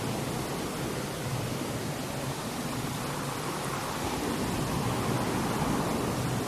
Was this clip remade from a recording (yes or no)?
no